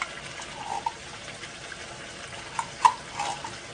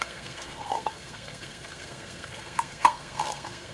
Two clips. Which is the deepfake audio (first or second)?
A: second